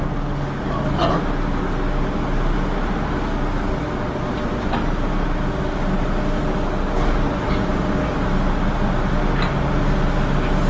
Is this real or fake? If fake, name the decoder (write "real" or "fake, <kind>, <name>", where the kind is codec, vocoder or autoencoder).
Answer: real